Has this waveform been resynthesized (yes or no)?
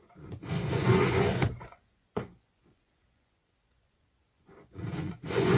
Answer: yes